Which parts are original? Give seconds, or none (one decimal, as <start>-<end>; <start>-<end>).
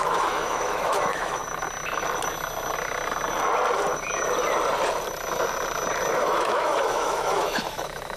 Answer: 1.4-6.1